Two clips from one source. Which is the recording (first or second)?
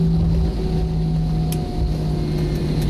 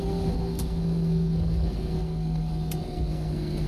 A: first